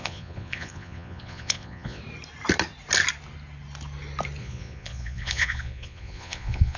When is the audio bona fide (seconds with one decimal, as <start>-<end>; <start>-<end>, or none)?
2.0-4.4